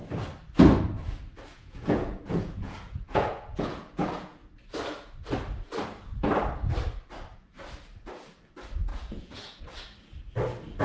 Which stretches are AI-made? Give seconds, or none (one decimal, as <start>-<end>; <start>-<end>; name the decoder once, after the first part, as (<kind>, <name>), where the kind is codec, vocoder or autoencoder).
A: 1.5-4.5 (vocoder, Vocos); 8.9-9.6

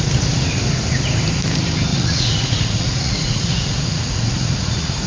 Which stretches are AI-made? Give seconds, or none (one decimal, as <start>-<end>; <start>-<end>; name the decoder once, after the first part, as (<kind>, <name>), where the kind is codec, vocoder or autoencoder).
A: 1.9-5.1 (vocoder, Vocos)

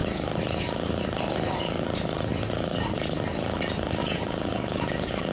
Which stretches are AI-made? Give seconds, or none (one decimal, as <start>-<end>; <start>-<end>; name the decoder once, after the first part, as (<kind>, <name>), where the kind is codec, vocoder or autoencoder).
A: 4.0-5.3 (vocoder, Vocos)

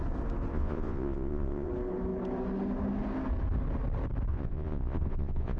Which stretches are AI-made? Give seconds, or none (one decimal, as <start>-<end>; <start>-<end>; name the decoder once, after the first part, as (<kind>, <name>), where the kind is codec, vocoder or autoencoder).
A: 0.5-1.7 (vocoder, Vocos); 4.3-5.6

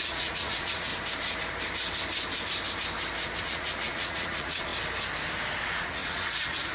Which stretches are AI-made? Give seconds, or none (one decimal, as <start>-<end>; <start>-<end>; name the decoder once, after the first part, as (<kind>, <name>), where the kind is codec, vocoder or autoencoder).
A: 0.0-0.9 (vocoder, Vocos); 3.4-4.7; 5.6-6.7

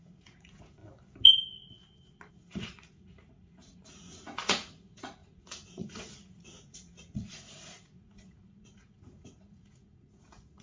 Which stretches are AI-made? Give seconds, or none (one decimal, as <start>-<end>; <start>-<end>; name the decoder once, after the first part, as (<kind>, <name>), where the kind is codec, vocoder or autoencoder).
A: 0.0-0.8 (vocoder, Vocos); 2.3-10.6